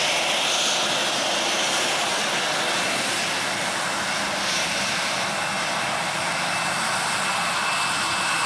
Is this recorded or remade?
recorded